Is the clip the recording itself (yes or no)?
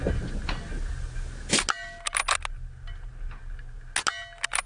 yes